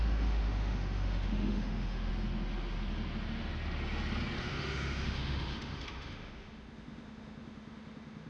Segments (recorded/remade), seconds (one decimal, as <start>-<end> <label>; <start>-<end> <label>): 0.0-2.1 remade; 2.1-4.4 recorded; 4.4-8.3 remade